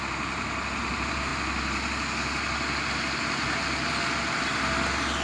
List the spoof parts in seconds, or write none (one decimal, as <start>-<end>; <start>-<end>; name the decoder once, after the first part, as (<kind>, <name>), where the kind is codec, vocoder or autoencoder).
none